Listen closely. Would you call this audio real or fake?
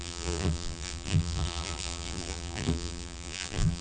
fake